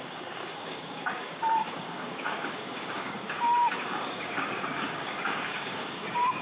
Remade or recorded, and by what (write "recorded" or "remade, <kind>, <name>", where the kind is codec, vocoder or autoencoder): remade, codec, DAC